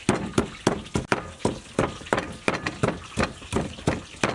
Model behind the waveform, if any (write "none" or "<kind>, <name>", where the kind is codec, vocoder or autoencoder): none